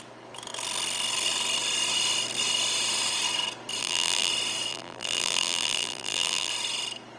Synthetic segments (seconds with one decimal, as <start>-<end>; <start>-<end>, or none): 3.8-4.3; 4.7-6.5